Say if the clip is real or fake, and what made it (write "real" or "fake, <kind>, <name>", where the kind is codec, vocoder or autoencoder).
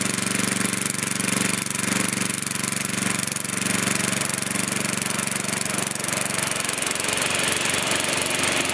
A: real